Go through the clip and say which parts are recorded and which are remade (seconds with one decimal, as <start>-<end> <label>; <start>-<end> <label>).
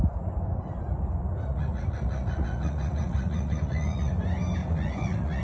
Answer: 0.0-1.5 recorded; 1.5-4.1 remade; 4.1-4.6 recorded; 4.6-5.4 remade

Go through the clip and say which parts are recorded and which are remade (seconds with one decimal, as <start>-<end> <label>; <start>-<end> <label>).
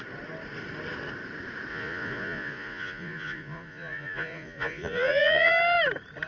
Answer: 0.0-1.7 recorded; 1.7-5.5 remade; 5.5-6.3 recorded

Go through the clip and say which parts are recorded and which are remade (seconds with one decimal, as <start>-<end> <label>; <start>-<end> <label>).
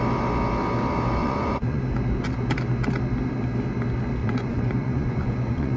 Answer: 0.0-1.2 recorded; 1.2-1.8 remade; 1.8-4.2 recorded; 4.2-5.8 remade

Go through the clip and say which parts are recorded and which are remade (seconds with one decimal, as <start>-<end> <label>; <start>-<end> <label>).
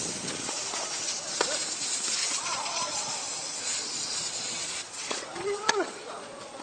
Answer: 0.0-2.2 recorded; 2.2-6.6 remade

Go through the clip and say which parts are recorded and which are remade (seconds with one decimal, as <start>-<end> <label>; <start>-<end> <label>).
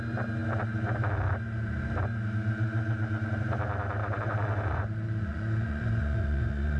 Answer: 0.0-4.0 recorded; 4.0-6.8 remade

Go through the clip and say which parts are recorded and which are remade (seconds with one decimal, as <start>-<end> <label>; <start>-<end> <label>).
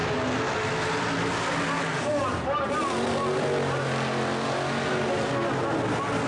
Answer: 0.0-6.3 recorded